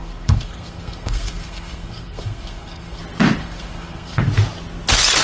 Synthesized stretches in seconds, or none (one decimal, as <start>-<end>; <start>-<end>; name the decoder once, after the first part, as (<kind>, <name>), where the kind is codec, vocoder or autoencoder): 0.0-3.0 (codec, SNAC); 3.4-4.2